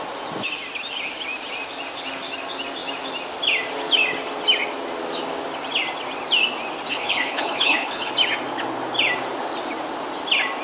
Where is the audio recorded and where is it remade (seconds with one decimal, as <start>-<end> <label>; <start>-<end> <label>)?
0.0-6.9 recorded; 6.9-8.1 remade; 8.1-10.6 recorded